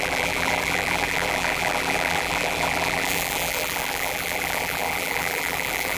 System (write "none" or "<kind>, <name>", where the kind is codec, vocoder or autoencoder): vocoder, BigVGAN v2